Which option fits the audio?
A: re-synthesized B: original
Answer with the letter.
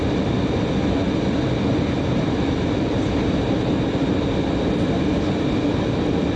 B